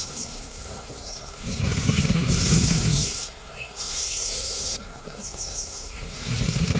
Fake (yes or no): yes